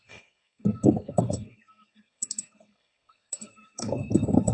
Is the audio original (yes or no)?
no